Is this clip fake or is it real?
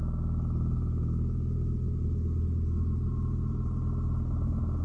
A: real